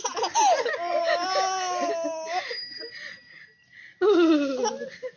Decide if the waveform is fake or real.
real